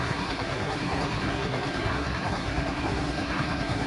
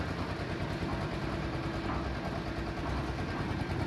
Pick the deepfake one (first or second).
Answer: first